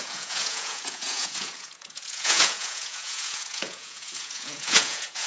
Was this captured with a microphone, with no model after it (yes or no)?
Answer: no